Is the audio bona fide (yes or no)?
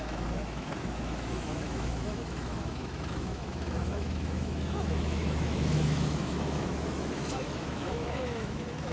no